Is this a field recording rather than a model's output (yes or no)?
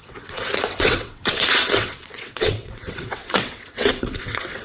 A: no